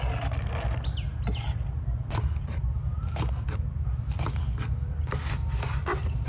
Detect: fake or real real